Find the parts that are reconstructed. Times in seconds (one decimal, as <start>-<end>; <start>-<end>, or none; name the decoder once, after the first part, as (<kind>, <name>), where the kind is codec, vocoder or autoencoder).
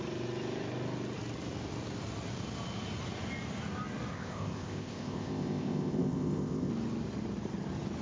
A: 4.1-6.7 (codec, ZipCodec)